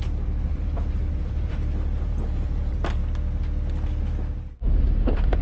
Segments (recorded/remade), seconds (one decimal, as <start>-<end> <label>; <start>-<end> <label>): 0.0-3.0 remade; 3.0-4.0 recorded; 4.0-5.4 remade

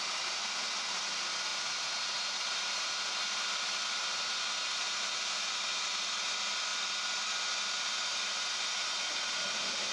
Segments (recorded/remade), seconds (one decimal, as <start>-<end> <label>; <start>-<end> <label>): 0.0-9.9 recorded

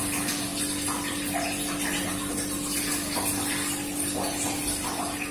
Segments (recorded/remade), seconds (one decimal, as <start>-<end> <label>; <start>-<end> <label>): 0.0-5.3 recorded

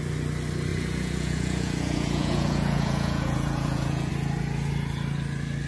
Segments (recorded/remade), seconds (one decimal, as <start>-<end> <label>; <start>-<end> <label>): 0.0-0.7 recorded; 0.7-4.1 remade; 4.1-5.7 recorded

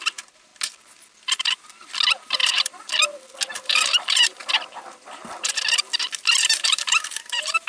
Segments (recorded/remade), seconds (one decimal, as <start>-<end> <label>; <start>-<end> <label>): 0.0-0.5 remade; 0.5-2.2 recorded; 2.2-2.9 remade; 2.9-3.6 recorded; 3.6-4.4 remade; 4.4-6.4 recorded; 6.4-7.7 remade